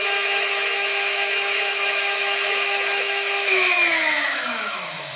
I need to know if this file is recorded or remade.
remade